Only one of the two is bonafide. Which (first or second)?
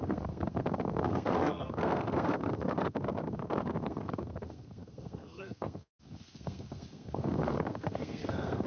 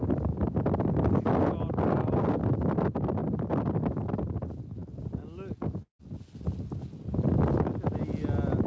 second